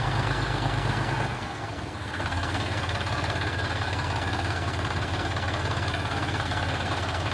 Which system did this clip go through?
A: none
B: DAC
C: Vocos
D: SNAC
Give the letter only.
D